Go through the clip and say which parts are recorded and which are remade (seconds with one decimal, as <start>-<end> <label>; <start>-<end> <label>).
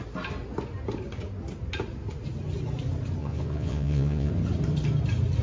0.0-3.2 recorded; 3.2-4.3 remade; 4.3-5.4 recorded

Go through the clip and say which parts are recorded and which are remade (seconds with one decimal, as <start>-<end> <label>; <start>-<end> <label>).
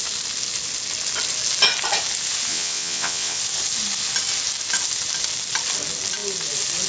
0.0-2.5 recorded; 2.5-3.4 remade; 3.4-6.9 recorded